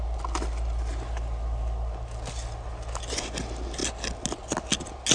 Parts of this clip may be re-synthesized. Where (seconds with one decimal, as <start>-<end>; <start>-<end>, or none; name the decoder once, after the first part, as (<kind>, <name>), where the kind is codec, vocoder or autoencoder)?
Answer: none